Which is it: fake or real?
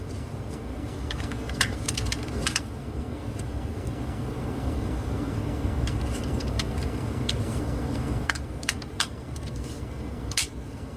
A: fake